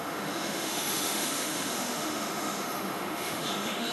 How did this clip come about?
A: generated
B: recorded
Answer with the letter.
A